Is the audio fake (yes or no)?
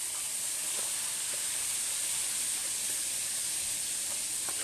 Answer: no